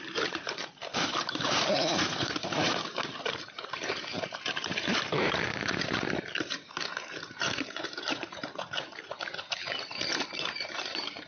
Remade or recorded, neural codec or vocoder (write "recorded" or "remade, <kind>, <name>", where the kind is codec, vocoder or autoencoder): remade, vocoder, BigVGAN v2